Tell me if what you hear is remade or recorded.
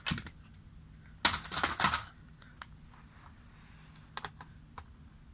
recorded